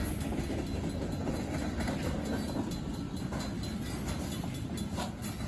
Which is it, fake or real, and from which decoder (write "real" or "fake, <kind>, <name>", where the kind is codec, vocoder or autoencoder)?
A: real